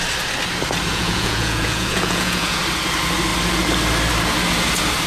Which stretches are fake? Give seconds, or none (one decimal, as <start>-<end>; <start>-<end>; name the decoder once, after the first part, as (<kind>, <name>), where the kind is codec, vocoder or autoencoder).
0.9-2.6 (vocoder, Vocos)